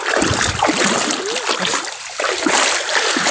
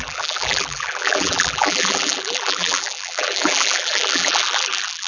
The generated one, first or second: second